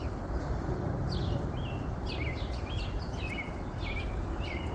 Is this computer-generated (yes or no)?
yes